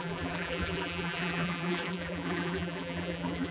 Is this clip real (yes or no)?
no